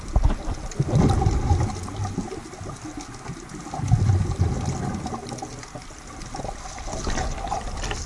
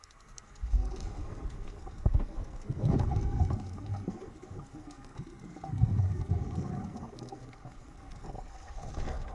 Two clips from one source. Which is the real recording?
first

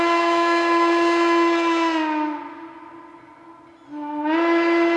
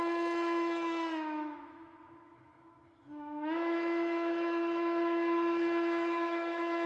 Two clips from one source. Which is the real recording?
first